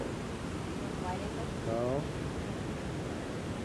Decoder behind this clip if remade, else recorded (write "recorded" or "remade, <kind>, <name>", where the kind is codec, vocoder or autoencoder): recorded